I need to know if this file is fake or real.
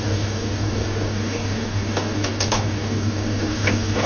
fake